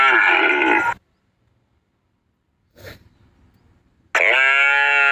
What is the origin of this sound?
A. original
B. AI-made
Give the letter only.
A